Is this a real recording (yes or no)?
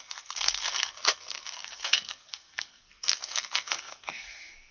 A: no